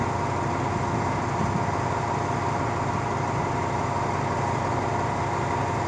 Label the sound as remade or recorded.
recorded